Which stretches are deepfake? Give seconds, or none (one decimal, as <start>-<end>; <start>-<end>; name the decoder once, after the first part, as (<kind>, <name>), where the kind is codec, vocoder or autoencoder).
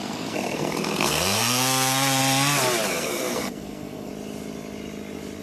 0.0-2.2 (codec, SNAC); 2.9-4.1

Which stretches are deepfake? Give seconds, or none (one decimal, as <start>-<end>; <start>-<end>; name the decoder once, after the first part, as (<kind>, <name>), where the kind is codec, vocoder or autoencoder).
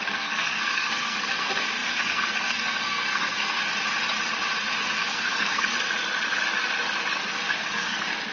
0.0-3.6 (codec, SNAC); 5.0-5.7; 7.3-8.3